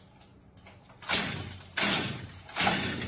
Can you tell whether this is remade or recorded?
recorded